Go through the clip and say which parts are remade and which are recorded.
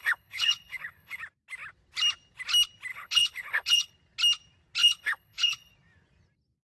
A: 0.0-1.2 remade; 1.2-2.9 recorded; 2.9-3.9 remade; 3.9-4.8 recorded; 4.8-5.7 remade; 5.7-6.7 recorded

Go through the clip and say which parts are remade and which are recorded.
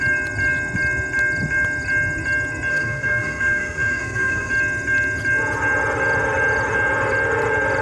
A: 0.0-2.7 recorded; 2.7-4.5 remade; 4.5-7.8 recorded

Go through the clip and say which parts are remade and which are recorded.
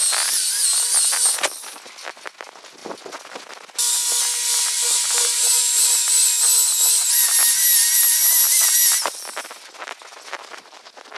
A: 0.0-11.2 recorded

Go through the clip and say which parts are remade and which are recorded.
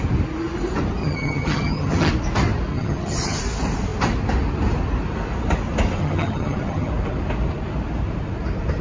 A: 0.0-1.0 recorded; 1.0-2.1 remade; 2.1-2.7 recorded; 2.7-3.4 remade; 3.4-6.0 recorded; 6.0-6.9 remade; 6.9-8.8 recorded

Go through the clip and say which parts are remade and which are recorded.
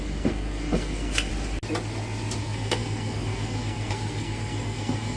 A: 0.0-1.3 remade; 1.3-2.4 recorded; 2.4-5.2 remade